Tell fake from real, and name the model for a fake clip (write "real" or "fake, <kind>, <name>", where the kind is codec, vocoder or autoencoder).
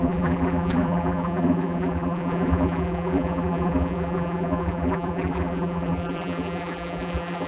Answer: fake, vocoder, BigVGAN v2